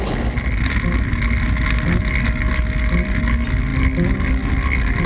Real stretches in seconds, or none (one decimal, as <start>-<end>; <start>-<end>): 0.0-5.1